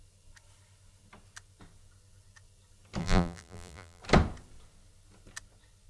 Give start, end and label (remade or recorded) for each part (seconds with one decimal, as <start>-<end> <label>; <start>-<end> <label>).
0.0-3.0 recorded; 3.0-4.0 remade; 4.0-5.9 recorded